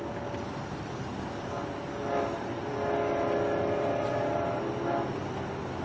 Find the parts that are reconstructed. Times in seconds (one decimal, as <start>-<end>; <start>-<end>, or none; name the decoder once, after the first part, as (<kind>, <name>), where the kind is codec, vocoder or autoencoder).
none